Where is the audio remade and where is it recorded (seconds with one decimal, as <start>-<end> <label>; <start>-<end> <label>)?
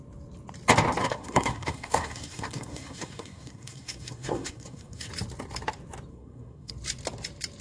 0.0-1.0 recorded; 1.0-5.1 remade; 5.1-6.1 recorded; 6.1-6.7 remade; 6.7-7.6 recorded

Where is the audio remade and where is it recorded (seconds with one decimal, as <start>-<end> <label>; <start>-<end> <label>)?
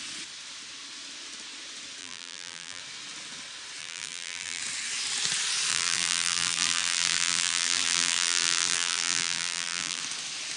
0.0-2.0 recorded; 2.0-2.8 remade; 2.8-3.8 recorded; 3.8-4.6 remade; 4.6-5.7 recorded; 5.7-10.0 remade; 10.0-10.6 recorded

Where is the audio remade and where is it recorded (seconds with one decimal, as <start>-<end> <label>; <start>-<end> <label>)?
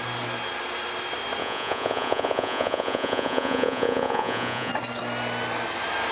0.0-1.4 recorded; 1.4-4.7 remade; 4.7-6.1 recorded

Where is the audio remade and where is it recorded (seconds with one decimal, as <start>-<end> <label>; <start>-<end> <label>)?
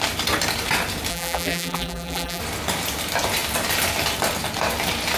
0.0-1.1 recorded; 1.1-2.4 remade; 2.4-5.2 recorded